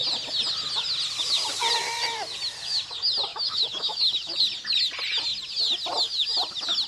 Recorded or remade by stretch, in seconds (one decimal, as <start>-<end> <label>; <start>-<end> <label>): 0.0-3.3 recorded; 3.3-4.4 remade; 4.4-6.9 recorded